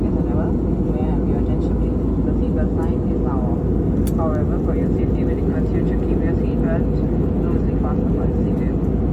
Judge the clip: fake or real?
real